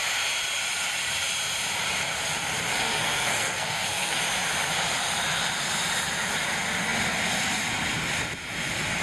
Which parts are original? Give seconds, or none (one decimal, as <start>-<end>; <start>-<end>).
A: 0.0-2.7; 4.2-9.0